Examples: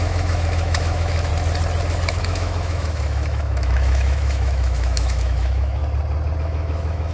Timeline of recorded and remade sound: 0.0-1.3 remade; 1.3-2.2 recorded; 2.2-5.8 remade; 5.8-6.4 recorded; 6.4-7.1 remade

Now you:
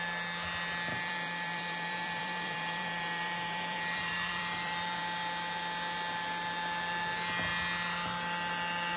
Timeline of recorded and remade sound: 0.0-0.9 recorded; 0.9-5.0 remade; 5.0-9.0 recorded

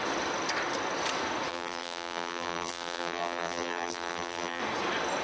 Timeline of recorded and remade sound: 0.0-1.5 recorded; 1.5-4.6 remade; 4.6-5.2 recorded

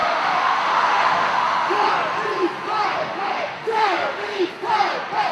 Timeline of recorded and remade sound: 0.0-1.9 remade; 1.9-2.9 recorded; 2.9-4.5 remade; 4.5-5.3 recorded

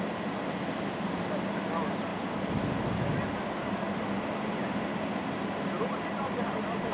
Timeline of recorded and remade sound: 0.0-6.9 recorded

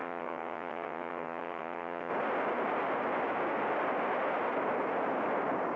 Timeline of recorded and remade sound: 0.0-2.1 remade; 2.1-5.8 recorded